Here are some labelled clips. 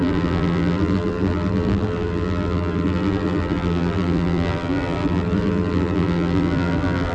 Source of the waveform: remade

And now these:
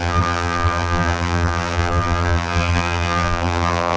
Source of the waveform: remade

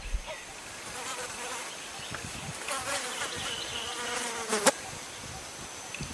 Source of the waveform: remade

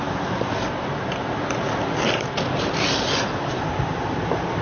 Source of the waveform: remade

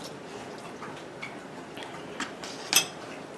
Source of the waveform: remade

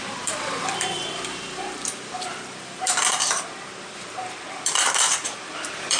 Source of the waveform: remade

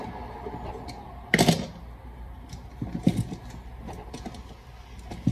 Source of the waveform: recorded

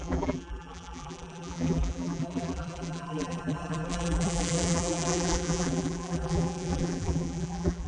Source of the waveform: remade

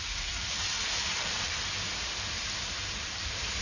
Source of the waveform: remade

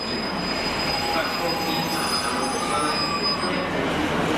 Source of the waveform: recorded